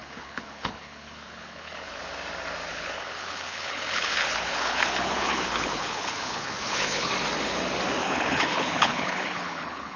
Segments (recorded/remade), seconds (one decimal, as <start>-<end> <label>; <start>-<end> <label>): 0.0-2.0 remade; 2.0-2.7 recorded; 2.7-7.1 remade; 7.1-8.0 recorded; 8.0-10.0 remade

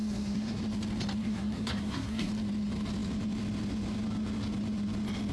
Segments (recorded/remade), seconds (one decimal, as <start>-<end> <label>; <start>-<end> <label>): 0.0-0.6 remade; 0.6-1.2 recorded; 1.2-2.3 remade; 2.3-5.3 recorded

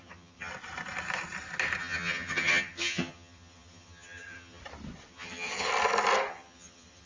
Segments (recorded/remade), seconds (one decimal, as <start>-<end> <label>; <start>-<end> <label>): 0.0-0.5 remade; 0.5-1.8 recorded; 1.8-4.6 remade; 4.6-5.1 recorded; 5.1-5.7 remade; 5.7-6.3 recorded; 6.3-7.1 remade

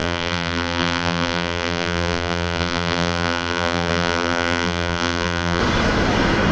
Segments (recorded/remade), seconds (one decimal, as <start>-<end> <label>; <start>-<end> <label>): 0.0-5.6 remade; 5.6-6.5 recorded

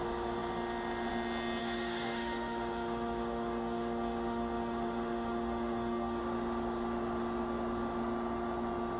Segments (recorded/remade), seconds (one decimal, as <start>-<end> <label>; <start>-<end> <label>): 0.0-1.6 recorded; 1.6-6.2 remade; 6.2-9.0 recorded